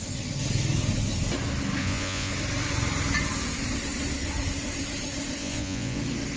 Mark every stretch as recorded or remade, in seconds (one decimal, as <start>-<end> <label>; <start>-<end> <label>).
0.0-1.8 recorded; 1.8-2.3 remade; 2.3-5.4 recorded; 5.4-6.0 remade; 6.0-6.4 recorded